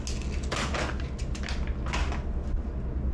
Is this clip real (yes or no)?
yes